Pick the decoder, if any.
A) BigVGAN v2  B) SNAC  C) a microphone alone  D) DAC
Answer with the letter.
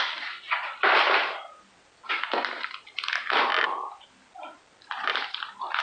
C